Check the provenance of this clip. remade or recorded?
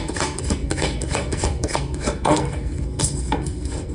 remade